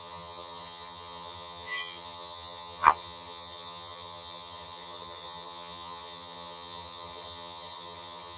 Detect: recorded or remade remade